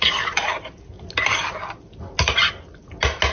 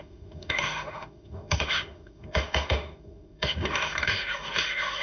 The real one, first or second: first